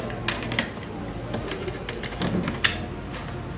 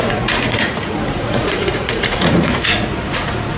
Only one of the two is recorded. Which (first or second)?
first